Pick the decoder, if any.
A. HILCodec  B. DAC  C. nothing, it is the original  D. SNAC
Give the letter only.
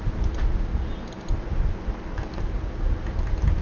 C